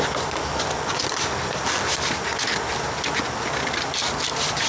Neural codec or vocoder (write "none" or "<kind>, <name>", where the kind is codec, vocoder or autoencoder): none